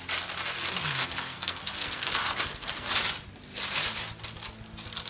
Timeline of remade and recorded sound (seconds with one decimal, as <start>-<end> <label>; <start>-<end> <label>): 0.0-0.8 recorded; 0.8-2.9 remade; 2.9-5.1 recorded